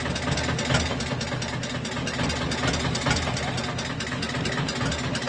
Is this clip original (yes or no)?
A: yes